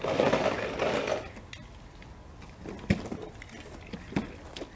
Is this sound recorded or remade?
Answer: recorded